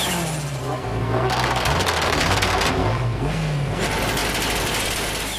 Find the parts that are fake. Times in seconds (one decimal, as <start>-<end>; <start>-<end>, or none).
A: 0.6-3.8